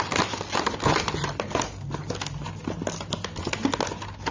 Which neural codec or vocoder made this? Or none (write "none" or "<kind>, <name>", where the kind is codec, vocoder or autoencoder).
none